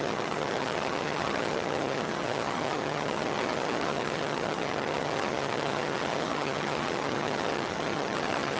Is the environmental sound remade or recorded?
remade